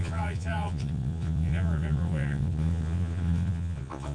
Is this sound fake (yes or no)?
yes